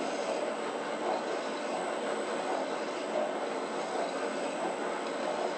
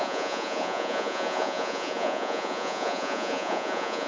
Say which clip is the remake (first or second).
second